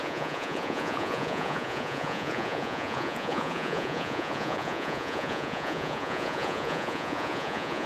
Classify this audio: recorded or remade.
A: remade